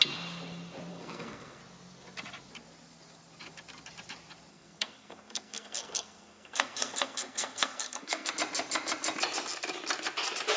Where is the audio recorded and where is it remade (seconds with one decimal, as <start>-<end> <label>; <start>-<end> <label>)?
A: 0.0-0.9 recorded; 0.9-1.6 remade; 1.6-4.5 recorded; 4.5-8.3 remade; 8.3-10.6 recorded